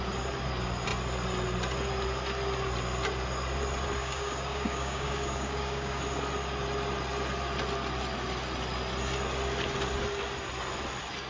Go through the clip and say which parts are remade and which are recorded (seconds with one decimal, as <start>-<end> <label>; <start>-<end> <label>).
0.0-4.0 recorded; 4.0-6.0 remade; 6.0-11.3 recorded